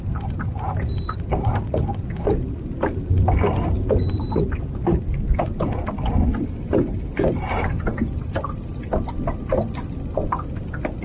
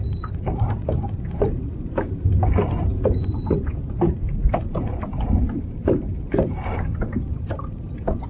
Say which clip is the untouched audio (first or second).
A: first